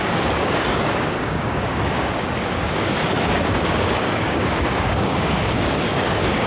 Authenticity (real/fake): fake